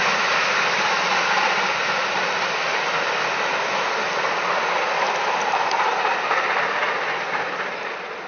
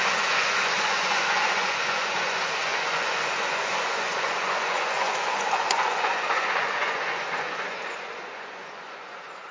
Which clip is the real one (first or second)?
first